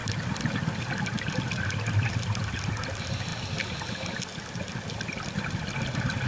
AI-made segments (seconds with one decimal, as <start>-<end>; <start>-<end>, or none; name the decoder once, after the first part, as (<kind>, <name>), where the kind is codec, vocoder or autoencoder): none